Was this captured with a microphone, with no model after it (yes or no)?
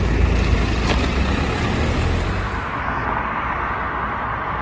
yes